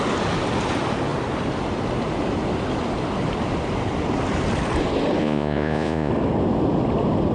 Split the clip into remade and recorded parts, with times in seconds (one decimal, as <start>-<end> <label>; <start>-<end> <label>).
0.0-5.2 recorded; 5.2-6.1 remade; 6.1-7.3 recorded